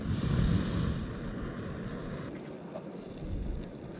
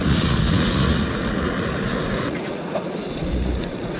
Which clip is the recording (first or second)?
first